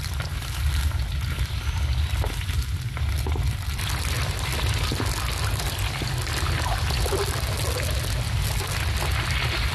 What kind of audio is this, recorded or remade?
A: recorded